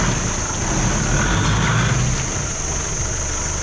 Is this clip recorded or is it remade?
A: recorded